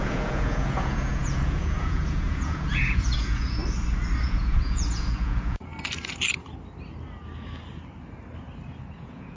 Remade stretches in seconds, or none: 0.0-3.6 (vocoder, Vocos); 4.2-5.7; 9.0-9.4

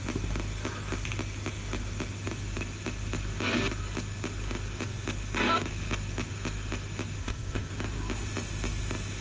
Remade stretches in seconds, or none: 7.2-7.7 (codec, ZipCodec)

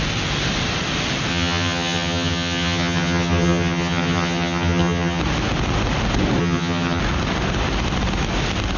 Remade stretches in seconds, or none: 1.3-5.2 (vocoder, HiFi-GAN); 6.4-7.0

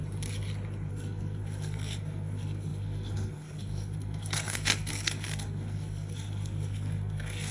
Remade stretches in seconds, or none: 0.9-7.5 (codec, SNAC)